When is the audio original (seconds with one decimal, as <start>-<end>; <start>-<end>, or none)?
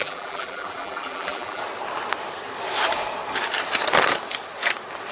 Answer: 1.6-5.1